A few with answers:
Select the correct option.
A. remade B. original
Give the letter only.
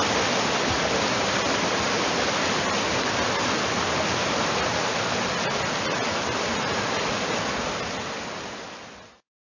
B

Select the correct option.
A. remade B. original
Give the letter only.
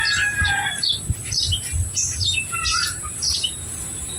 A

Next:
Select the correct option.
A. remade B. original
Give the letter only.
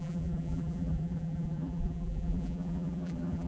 A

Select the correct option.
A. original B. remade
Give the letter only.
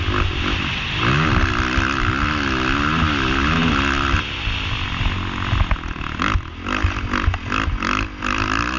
A